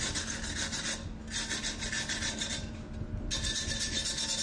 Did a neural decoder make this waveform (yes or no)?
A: no